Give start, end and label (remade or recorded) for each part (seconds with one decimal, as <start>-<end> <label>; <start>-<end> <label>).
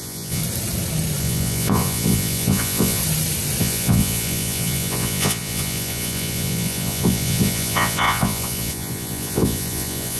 0.0-0.4 remade; 0.4-1.2 recorded; 1.2-3.0 remade; 3.0-3.6 recorded; 3.6-10.2 remade